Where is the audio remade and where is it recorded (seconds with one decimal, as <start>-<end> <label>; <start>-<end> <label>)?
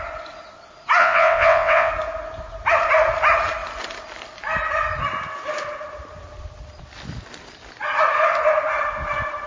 0.0-1.0 recorded; 1.0-1.9 remade; 1.9-9.5 recorded